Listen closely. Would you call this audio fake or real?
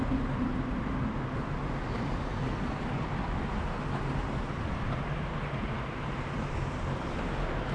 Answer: real